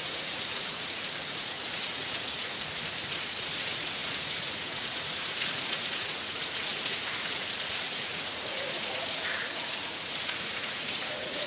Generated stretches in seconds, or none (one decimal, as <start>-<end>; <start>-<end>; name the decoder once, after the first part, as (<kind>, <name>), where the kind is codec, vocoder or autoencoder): 0.0-11.5 (vocoder, Vocos)